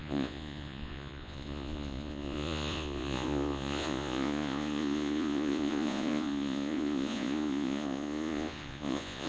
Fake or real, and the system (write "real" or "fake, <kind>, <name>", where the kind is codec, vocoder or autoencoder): fake, vocoder, Vocos